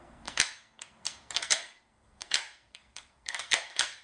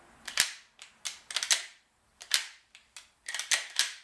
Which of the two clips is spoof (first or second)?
first